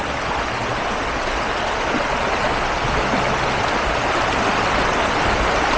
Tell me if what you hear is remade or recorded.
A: recorded